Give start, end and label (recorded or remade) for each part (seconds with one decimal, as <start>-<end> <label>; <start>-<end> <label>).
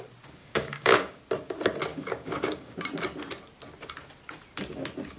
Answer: 0.0-0.4 recorded; 0.4-1.2 remade; 1.2-1.9 recorded; 1.9-2.8 remade; 2.8-5.2 recorded